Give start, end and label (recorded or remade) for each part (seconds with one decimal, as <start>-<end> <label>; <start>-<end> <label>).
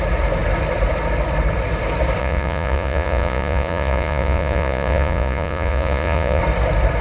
0.0-2.2 recorded; 2.2-6.4 remade; 6.4-7.0 recorded